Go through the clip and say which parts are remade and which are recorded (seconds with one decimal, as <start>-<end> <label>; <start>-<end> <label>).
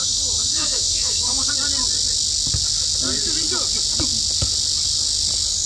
0.0-1.5 remade; 1.5-5.7 recorded